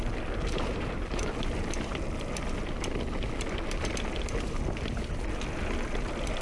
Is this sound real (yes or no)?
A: yes